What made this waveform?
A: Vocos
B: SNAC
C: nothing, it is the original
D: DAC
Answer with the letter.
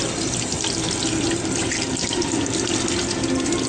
C